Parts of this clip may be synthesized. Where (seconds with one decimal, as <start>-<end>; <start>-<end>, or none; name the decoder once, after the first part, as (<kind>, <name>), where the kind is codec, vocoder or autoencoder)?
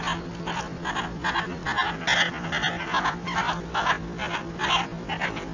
none